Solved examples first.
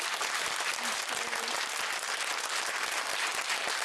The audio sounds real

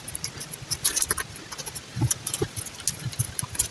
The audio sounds real